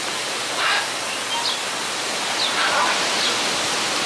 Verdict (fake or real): real